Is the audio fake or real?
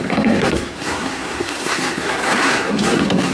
fake